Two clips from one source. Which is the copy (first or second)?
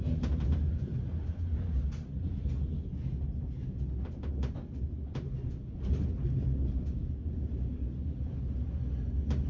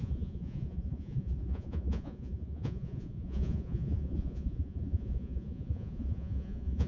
second